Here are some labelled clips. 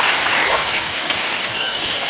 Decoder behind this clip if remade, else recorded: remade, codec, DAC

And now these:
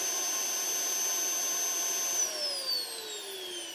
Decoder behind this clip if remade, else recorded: recorded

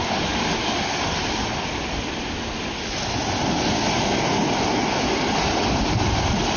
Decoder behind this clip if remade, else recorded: recorded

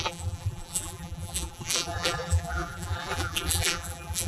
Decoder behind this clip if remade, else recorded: remade, vocoder, BigVGAN v2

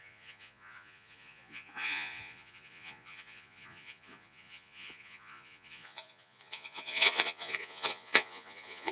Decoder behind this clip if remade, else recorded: remade, vocoder, Vocos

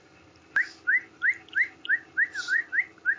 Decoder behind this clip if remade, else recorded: recorded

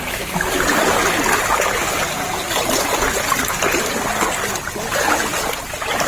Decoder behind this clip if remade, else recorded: recorded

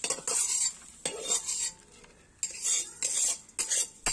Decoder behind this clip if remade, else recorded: recorded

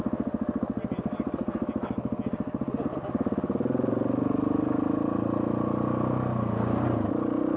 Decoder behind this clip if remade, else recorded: recorded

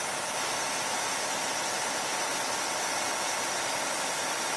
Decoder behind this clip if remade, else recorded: recorded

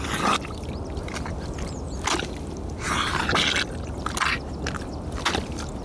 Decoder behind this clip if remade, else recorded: recorded